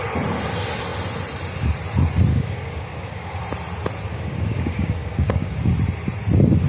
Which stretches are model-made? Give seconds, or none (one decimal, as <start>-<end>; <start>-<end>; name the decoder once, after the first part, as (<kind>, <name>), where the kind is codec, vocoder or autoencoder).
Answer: 2.3-3.4 (codec, DAC); 4.1-5.7